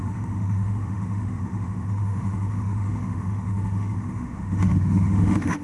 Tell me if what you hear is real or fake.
fake